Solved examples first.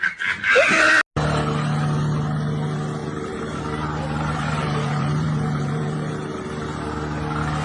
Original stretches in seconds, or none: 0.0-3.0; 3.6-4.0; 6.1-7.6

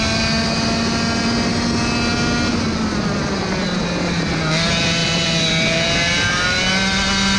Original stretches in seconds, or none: 0.0-5.0; 5.5-7.4

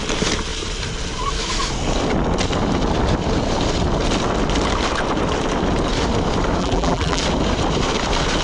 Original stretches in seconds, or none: 0.0-6.6; 7.2-8.4

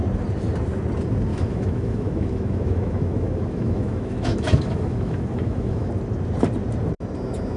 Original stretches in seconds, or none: 0.0-1.3; 5.9-7.6

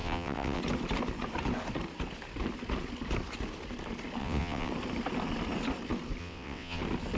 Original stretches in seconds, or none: 0.6-4.2; 4.7-6.2; 6.8-7.2